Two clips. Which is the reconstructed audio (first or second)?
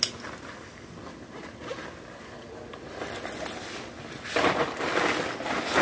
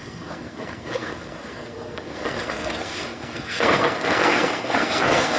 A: second